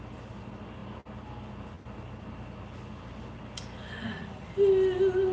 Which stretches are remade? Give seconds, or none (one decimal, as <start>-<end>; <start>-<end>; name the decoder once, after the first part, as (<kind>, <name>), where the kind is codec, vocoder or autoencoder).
4.0-4.5 (vocoder, Vocos)